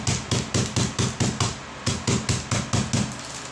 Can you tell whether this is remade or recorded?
recorded